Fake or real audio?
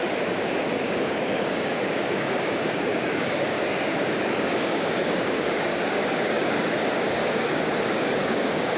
fake